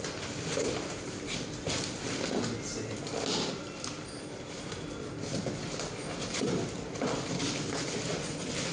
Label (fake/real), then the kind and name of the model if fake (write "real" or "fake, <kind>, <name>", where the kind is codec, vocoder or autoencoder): real